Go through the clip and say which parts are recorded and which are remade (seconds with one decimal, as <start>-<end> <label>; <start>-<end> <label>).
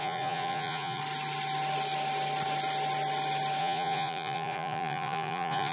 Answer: 0.0-1.0 remade; 1.0-3.6 recorded; 3.6-5.7 remade